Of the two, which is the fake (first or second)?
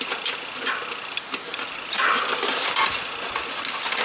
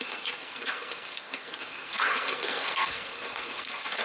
second